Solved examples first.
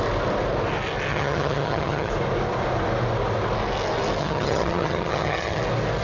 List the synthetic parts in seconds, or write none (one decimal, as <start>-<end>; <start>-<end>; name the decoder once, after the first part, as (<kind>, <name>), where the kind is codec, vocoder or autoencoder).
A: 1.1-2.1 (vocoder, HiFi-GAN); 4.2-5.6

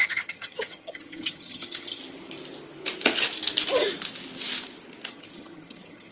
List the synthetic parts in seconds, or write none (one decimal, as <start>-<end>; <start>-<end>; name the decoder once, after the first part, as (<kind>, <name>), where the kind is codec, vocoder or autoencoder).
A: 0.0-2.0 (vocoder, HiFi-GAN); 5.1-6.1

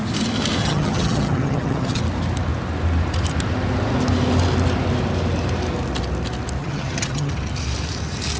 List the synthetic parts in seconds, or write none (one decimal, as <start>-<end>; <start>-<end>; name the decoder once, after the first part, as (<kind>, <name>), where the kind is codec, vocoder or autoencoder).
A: 0.6-2.0 (vocoder, HiFi-GAN); 6.6-7.3

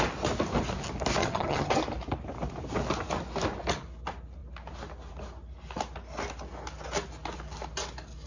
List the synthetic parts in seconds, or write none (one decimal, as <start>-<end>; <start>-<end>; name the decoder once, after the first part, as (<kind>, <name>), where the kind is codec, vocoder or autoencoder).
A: 1.2-1.7 (vocoder, HiFi-GAN)